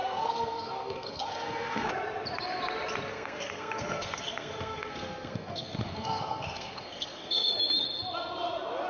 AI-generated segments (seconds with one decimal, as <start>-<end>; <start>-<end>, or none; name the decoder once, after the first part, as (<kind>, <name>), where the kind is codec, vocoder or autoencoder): 0.0-1.9 (codec, SNAC); 3.1-7.5